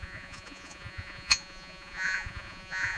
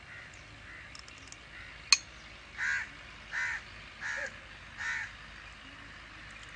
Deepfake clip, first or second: first